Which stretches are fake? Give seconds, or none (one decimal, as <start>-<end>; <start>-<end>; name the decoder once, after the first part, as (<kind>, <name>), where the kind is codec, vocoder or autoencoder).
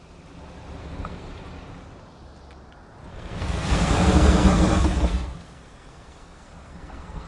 0.8-1.3 (codec, SNAC); 3.1-7.3